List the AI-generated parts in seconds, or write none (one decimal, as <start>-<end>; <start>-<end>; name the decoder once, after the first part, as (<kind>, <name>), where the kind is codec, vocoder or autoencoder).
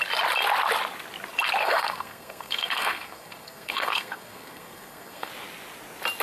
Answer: 1.6-5.3 (codec, SNAC)